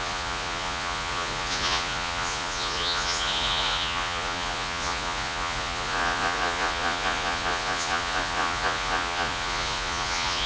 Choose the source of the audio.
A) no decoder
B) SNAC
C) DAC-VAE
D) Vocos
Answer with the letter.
D